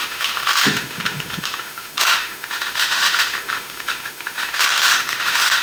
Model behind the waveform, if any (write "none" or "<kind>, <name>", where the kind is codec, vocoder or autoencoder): autoencoder, DAC-VAE